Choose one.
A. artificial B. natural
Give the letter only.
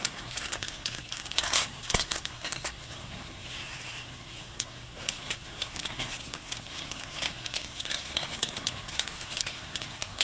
A